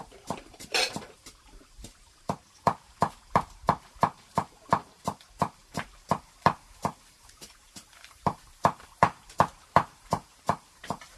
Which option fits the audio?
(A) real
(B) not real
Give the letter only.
B